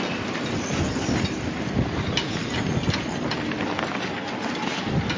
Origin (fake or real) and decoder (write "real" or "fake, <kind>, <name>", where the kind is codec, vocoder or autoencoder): real